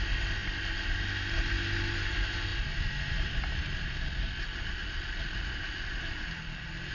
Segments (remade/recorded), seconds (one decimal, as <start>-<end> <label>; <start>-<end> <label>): 0.0-6.9 recorded